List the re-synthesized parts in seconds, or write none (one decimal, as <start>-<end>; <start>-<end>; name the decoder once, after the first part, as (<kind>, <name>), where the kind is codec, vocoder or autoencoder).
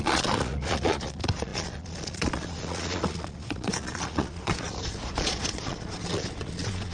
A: 0.0-6.9 (vocoder, Vocos)